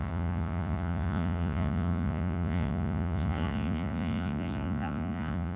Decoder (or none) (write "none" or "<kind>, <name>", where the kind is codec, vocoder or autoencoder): vocoder, Vocos